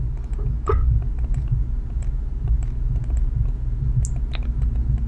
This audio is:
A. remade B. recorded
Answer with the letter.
B